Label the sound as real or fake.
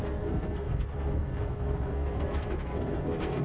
fake